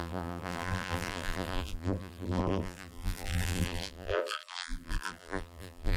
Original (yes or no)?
no